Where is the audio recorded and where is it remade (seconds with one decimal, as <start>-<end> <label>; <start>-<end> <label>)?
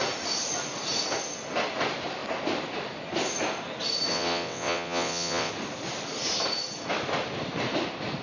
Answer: 0.0-4.1 recorded; 4.1-5.5 remade; 5.5-8.2 recorded